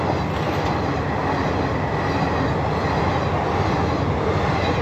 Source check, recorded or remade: recorded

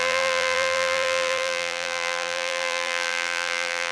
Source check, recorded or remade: remade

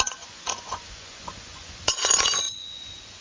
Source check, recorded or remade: remade